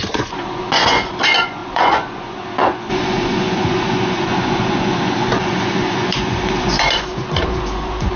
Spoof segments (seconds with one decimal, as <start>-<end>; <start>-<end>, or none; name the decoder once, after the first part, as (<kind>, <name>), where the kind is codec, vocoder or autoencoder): 0.0-8.2 (vocoder, Vocos)

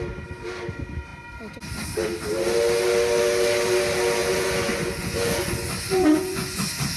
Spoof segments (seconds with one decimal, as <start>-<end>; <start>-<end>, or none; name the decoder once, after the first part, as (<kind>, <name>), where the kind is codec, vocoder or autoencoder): 4.2-6.6 (vocoder, Vocos)